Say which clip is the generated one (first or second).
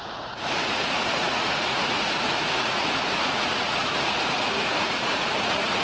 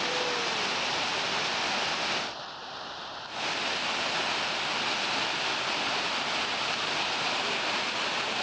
first